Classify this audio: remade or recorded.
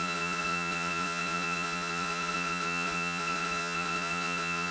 remade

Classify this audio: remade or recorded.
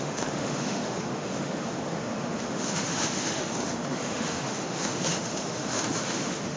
remade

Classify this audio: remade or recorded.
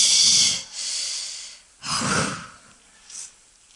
recorded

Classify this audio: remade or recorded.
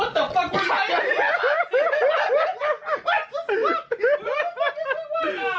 recorded